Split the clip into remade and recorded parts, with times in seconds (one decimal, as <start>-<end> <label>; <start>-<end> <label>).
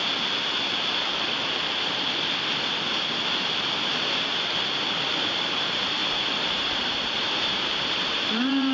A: 0.0-5.0 recorded; 5.0-8.7 remade